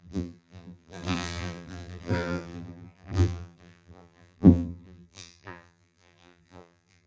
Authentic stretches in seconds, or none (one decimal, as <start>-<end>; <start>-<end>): none